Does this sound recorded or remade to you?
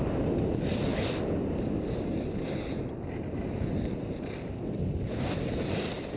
recorded